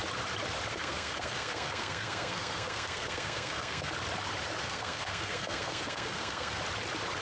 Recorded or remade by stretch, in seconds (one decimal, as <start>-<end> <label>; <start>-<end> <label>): 0.0-0.7 recorded; 0.7-3.9 remade; 3.9-4.6 recorded; 4.6-6.6 remade; 6.6-7.2 recorded